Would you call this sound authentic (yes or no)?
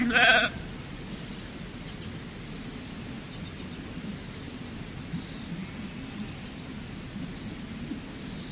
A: yes